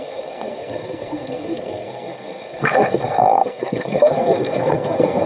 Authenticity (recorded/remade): remade